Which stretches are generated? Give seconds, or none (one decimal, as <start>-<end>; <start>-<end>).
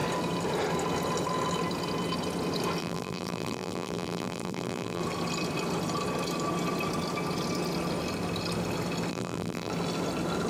2.8-5.0; 9.1-9.7